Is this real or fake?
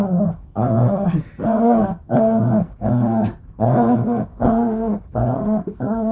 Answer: fake